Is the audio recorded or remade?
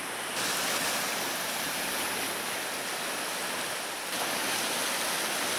recorded